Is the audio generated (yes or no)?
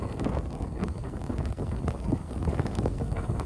yes